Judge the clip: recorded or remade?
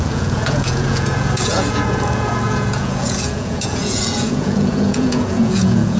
remade